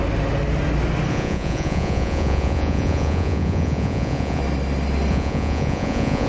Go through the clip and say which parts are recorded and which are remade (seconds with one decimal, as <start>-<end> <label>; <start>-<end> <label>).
0.0-1.1 recorded; 1.1-4.4 remade; 4.4-5.1 recorded; 5.1-6.3 remade

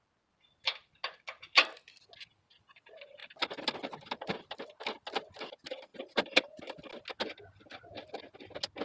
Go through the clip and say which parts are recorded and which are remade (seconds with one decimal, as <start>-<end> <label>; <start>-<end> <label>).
0.0-8.8 recorded